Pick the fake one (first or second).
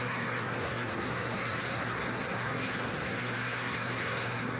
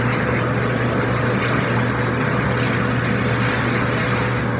first